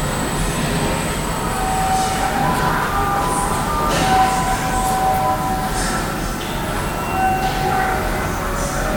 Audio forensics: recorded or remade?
recorded